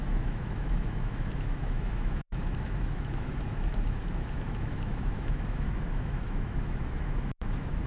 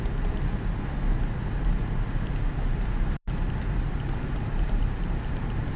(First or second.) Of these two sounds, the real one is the second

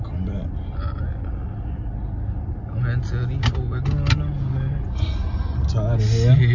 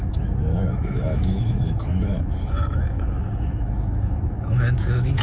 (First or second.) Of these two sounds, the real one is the first